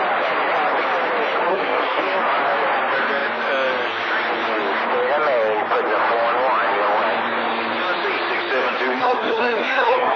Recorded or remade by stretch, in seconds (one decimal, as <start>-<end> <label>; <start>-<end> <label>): 0.0-1.5 recorded; 1.5-2.0 remade; 2.0-9.0 recorded; 9.0-10.2 remade